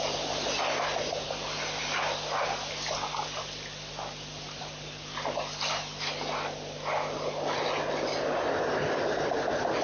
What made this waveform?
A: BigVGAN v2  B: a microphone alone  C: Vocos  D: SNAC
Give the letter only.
B